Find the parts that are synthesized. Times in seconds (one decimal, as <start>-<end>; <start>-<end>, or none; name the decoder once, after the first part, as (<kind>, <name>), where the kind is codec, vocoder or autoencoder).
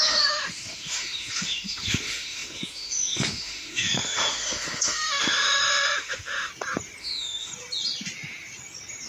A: 0.0-6.5 (autoencoder, DAC-VAE); 7.0-7.5